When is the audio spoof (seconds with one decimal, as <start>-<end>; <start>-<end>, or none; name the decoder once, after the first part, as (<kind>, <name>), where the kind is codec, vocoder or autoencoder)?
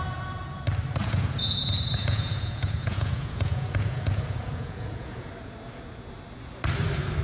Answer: 1.0-5.3 (vocoder, Vocos)